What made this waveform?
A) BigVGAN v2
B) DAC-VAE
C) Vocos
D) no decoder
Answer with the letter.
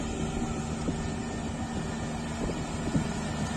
D